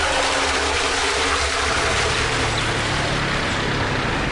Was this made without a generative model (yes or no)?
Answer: yes